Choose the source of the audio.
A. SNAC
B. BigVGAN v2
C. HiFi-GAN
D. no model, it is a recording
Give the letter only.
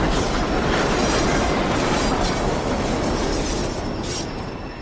D